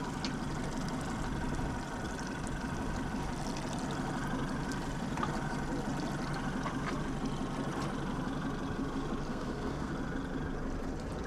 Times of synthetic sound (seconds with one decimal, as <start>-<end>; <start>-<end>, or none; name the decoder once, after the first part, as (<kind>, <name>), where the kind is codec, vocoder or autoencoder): 9.3-9.9 (codec, SNAC)